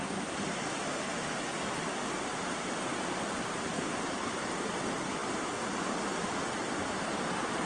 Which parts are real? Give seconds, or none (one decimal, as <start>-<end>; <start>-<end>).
0.0-7.7